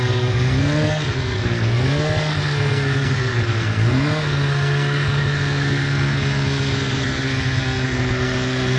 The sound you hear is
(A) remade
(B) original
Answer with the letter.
A